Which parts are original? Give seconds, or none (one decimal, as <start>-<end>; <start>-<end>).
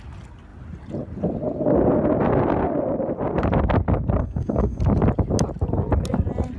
0.0-4.2; 4.8-6.6